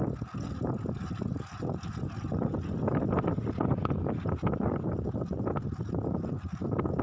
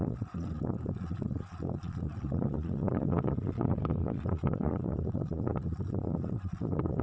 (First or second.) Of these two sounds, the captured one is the first